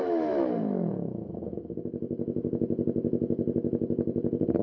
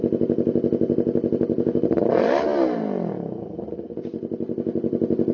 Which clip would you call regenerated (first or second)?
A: first